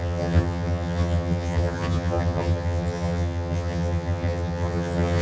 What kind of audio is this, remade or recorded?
remade